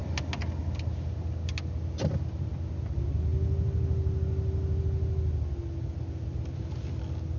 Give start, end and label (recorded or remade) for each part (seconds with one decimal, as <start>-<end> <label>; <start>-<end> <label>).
0.0-7.4 recorded